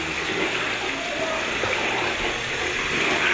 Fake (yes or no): no